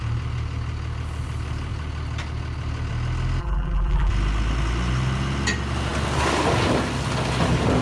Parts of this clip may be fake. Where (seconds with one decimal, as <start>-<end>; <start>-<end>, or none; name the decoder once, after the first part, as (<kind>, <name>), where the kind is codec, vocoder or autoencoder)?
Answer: 3.4-4.1 (vocoder, BigVGAN v2)